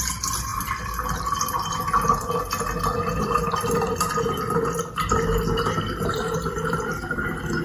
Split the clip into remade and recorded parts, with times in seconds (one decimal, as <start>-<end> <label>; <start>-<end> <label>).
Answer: 0.0-7.6 recorded